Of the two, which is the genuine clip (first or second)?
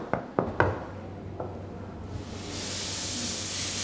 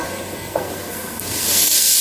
first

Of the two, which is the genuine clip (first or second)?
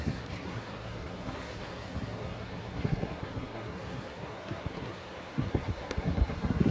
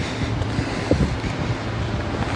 second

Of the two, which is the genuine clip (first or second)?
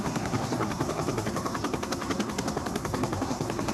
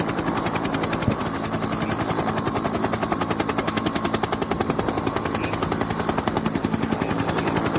second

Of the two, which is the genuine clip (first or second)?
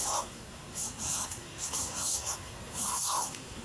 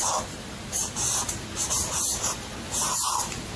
second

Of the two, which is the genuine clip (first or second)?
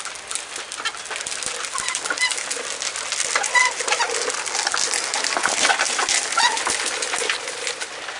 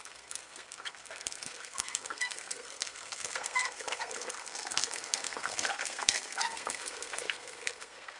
first